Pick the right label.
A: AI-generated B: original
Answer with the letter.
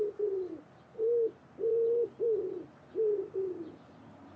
B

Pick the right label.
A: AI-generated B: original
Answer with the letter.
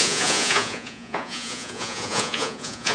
A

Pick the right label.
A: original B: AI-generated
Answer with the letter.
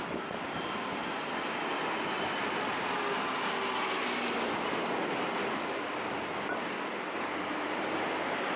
A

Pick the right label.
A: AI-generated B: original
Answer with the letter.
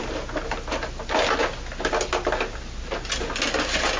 B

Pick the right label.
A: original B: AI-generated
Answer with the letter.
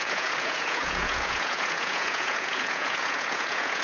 B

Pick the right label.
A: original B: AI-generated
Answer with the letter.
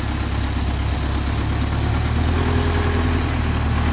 A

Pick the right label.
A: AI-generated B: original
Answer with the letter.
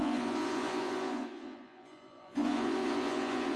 A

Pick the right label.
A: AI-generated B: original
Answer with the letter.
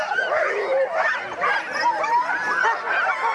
B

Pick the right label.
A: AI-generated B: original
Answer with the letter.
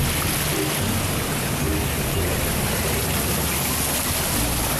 B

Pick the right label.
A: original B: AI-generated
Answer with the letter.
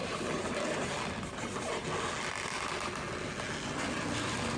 A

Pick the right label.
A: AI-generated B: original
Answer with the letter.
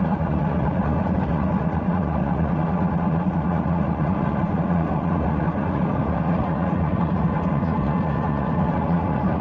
A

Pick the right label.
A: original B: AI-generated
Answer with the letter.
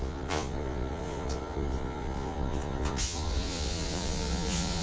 B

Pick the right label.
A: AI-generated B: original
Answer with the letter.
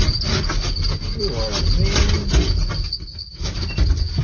B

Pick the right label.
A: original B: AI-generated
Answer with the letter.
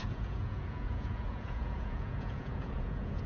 B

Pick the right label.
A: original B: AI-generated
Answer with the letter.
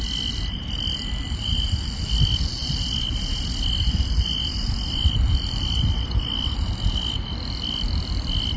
A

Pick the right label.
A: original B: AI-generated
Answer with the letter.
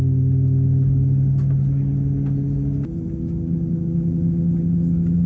A